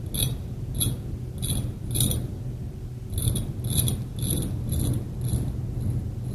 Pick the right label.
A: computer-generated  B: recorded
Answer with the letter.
B